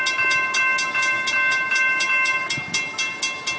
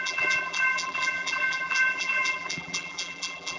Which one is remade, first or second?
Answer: second